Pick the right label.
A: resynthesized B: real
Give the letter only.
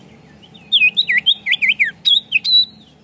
B